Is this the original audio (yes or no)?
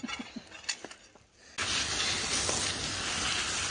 yes